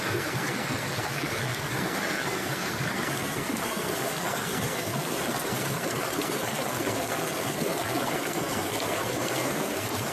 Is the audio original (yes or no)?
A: no